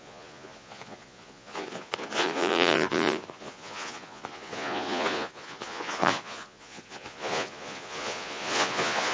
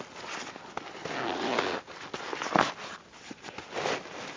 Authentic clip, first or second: second